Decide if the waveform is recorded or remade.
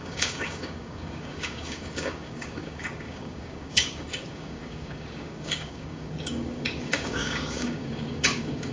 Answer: remade